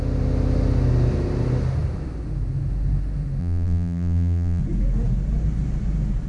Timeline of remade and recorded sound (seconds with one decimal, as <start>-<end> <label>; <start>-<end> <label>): 0.0-3.4 recorded; 3.4-4.6 remade; 4.6-6.3 recorded